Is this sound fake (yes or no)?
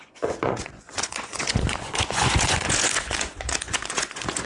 yes